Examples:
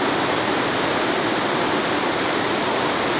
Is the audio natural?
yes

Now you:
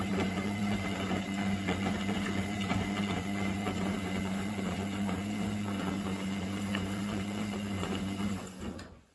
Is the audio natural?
no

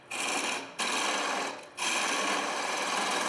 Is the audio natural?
yes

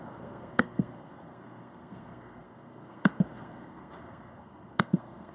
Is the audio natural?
no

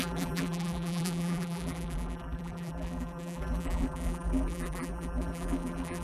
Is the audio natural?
no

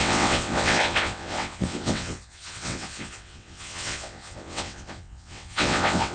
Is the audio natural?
no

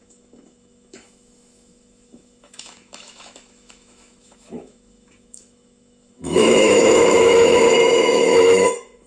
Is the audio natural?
no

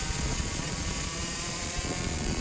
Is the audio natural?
no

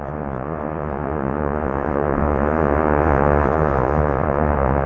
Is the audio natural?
no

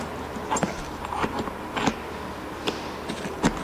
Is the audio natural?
yes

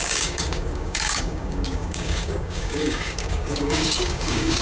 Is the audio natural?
no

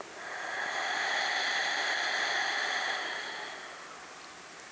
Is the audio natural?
yes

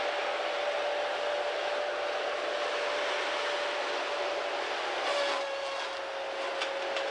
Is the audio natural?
yes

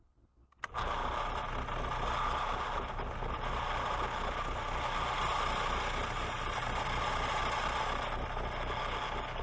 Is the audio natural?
yes